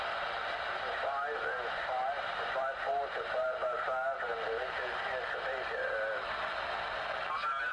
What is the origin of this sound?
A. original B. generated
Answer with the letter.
A